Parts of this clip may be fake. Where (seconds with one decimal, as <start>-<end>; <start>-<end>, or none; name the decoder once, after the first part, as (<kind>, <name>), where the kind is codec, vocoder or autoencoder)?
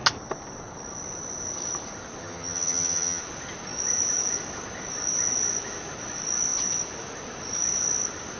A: 2.2-3.2 (vocoder, HiFi-GAN)